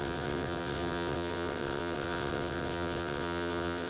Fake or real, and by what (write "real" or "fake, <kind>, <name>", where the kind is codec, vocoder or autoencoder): fake, vocoder, WaveNeXt